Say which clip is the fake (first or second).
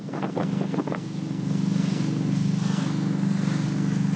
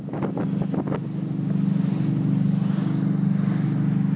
first